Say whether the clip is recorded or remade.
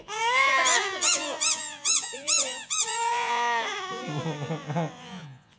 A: remade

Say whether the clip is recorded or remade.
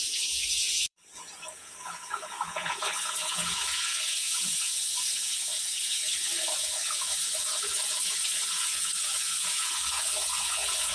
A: remade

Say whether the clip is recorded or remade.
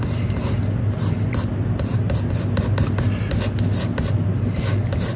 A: recorded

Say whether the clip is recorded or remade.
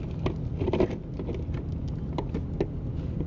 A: recorded